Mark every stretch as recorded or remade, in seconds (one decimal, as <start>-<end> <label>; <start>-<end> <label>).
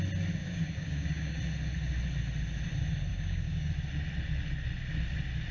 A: 0.0-0.4 recorded; 0.4-1.4 remade; 1.4-3.1 recorded; 3.1-3.7 remade; 3.7-5.5 recorded